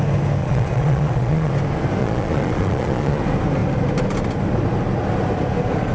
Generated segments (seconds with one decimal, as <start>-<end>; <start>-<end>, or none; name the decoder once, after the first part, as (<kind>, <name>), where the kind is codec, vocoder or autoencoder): 0.4-1.5 (vocoder, Vocos); 2.0-3.2